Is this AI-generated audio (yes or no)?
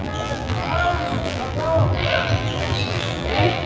yes